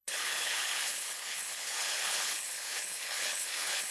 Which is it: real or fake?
fake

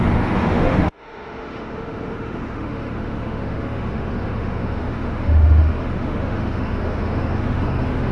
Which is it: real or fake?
fake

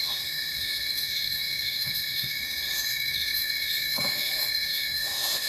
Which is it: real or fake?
fake